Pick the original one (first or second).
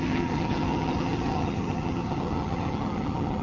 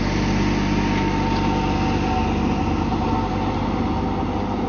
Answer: second